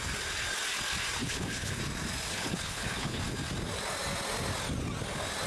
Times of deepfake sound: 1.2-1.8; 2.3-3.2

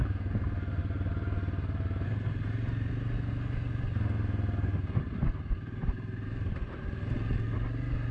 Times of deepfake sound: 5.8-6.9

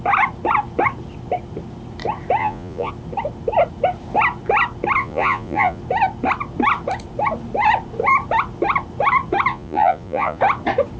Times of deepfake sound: 2.4-2.9; 5.0-5.8; 9.5-10.4

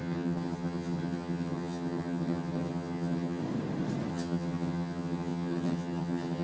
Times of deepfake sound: 0.0-3.4; 4.1-6.4